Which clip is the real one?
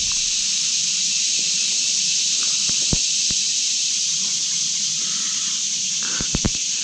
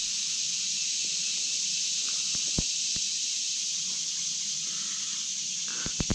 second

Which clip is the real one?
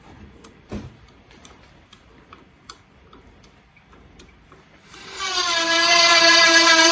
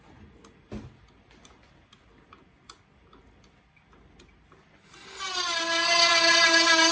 second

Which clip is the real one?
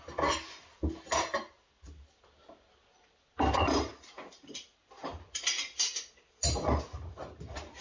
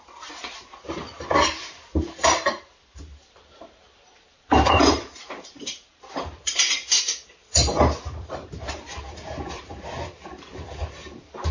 first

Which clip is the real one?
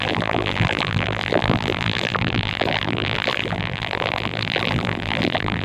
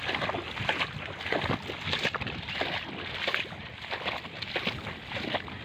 second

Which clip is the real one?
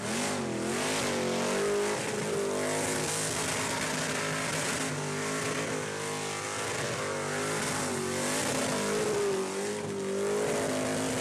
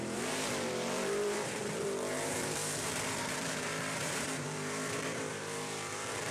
first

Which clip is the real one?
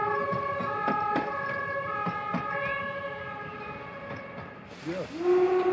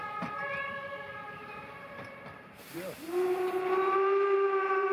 first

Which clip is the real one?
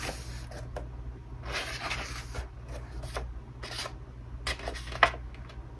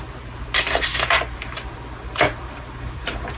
first